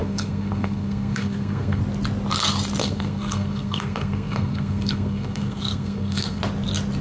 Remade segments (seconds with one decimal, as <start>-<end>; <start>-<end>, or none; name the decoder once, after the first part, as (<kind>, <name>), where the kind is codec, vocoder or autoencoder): 0.0-1.8 (codec, SNAC); 2.8-6.4

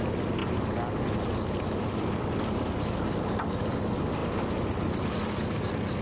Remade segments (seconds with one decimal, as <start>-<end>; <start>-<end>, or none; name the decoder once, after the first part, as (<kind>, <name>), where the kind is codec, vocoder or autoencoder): none